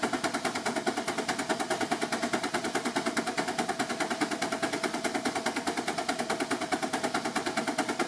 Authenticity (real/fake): real